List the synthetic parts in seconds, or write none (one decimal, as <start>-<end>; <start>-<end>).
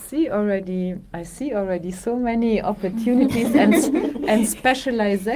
none